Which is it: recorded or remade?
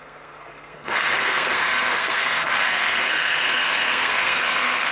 remade